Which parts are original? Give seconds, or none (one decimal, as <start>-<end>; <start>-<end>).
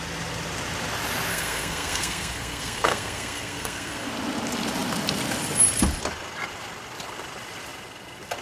0.0-1.3; 4.1-8.4